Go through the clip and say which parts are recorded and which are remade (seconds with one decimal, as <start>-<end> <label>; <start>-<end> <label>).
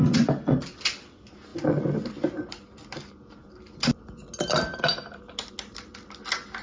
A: 0.0-6.6 recorded